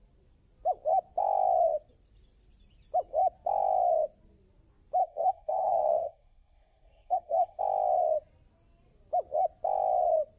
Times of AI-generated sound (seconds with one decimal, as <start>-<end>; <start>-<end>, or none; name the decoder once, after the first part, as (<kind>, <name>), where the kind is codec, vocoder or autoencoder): 5.0-7.6 (codec, SNAC)